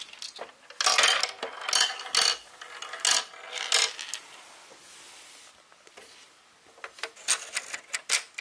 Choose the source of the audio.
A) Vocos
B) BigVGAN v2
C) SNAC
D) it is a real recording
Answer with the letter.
D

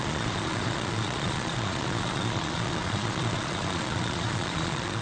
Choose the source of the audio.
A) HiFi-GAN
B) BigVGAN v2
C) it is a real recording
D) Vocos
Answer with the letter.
D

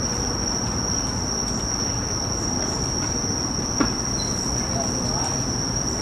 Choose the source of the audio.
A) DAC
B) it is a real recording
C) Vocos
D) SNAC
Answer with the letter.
B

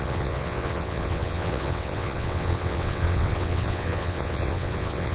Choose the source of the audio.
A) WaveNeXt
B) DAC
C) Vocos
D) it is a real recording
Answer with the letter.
A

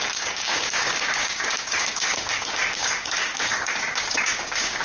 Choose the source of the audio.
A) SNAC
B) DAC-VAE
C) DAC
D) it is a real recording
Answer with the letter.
C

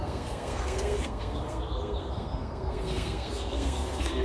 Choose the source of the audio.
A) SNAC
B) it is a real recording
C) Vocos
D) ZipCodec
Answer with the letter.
A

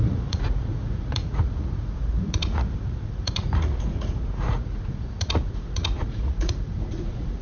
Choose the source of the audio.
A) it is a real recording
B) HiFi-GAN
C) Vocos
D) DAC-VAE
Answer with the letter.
C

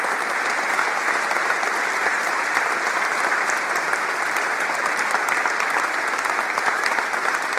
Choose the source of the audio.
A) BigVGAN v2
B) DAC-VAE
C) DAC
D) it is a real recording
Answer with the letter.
D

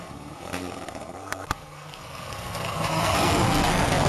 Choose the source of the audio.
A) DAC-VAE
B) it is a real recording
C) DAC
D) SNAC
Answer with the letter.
D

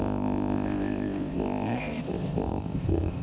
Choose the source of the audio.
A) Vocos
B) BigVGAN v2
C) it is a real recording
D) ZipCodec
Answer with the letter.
D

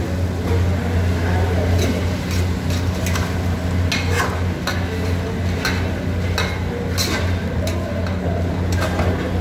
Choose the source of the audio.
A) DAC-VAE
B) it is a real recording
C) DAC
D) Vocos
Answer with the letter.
B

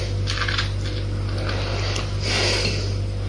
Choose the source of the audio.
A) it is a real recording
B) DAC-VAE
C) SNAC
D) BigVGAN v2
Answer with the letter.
A